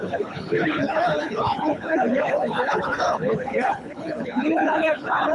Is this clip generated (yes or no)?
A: yes